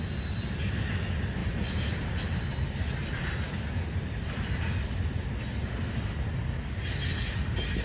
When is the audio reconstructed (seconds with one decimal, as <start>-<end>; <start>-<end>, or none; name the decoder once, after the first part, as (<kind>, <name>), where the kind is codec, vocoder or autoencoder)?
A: 1.4-2.3 (vocoder, BigVGAN v2)